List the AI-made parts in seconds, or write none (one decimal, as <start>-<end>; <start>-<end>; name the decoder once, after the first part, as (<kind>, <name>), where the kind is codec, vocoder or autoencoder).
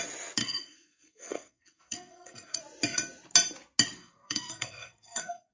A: 0.4-2.6 (codec, SNAC); 4.0-5.5